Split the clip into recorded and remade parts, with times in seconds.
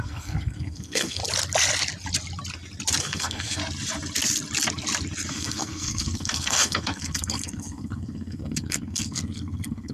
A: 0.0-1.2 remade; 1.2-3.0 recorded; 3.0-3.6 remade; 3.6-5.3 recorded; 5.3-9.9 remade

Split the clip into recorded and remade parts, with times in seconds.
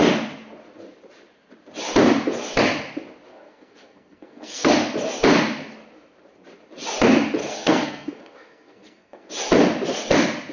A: 0.0-3.3 recorded; 3.3-4.7 remade; 4.7-7.4 recorded; 7.4-9.3 remade; 9.3-10.5 recorded